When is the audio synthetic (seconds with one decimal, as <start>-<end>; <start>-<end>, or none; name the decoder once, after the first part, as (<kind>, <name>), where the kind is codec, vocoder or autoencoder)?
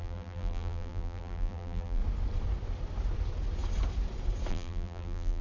0.0-2.0 (vocoder, BigVGAN v2); 4.5-5.4